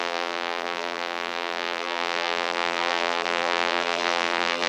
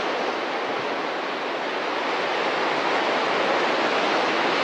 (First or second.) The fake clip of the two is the first